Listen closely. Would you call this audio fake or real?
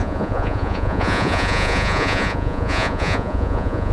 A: fake